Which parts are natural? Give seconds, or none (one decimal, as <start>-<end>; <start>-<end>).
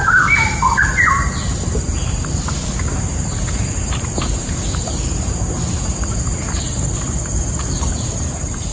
0.0-1.1